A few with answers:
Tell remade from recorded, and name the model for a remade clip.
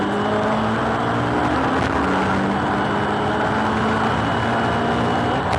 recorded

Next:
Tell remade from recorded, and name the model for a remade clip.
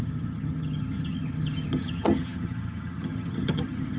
remade, vocoder, HiFi-GAN